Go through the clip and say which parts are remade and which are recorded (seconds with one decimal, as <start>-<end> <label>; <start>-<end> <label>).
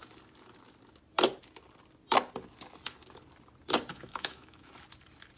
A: 0.0-3.9 recorded; 3.9-4.7 remade; 4.7-5.4 recorded